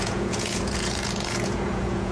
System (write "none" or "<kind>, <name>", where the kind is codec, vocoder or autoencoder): vocoder, Vocos